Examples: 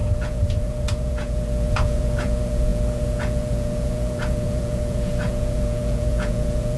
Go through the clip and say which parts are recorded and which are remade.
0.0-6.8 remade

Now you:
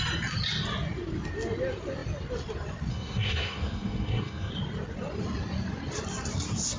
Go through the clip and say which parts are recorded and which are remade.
0.0-2.9 recorded; 2.9-4.5 remade; 4.5-6.8 recorded